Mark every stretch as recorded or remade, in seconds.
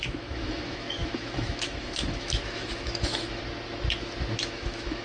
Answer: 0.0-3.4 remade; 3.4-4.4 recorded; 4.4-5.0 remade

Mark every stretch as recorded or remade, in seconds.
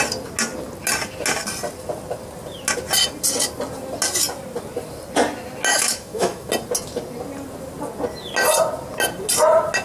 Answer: 0.0-5.7 recorded; 5.7-6.5 remade; 6.5-9.8 recorded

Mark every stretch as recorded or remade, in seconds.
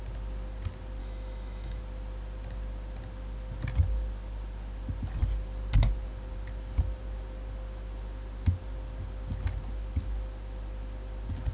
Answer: 0.0-1.0 recorded; 1.0-1.8 remade; 1.8-11.5 recorded